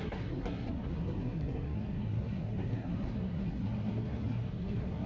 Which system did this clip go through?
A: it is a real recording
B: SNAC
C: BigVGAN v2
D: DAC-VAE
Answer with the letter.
B